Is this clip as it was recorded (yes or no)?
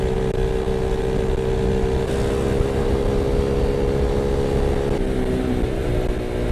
yes